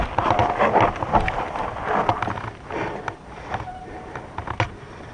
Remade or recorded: recorded